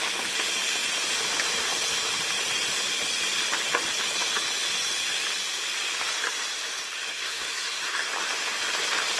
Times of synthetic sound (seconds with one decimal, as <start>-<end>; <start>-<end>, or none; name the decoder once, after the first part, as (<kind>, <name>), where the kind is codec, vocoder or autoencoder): 7.1-8.1 (codec, SNAC)